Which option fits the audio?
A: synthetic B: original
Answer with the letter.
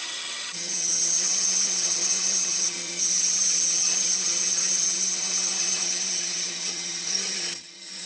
A